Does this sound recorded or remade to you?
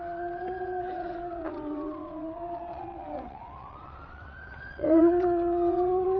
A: remade